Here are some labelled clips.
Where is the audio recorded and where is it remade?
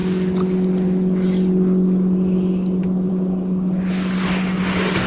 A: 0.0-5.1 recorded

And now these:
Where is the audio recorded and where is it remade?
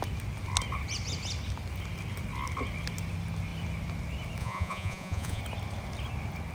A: 0.0-4.4 recorded; 4.4-5.4 remade; 5.4-6.5 recorded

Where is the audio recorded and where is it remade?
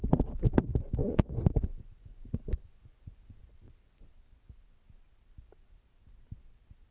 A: 0.0-1.0 recorded; 1.0-4.1 remade; 4.1-6.9 recorded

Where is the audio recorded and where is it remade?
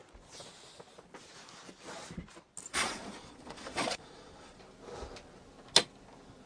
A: 0.0-2.7 recorded; 2.7-4.6 remade; 4.6-6.5 recorded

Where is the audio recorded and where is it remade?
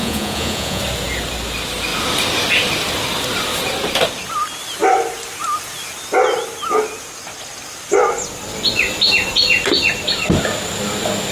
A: 0.0-0.8 remade; 0.8-11.3 recorded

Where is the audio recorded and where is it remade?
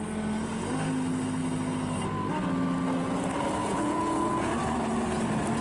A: 0.0-3.6 recorded; 3.6-4.5 remade; 4.5-5.6 recorded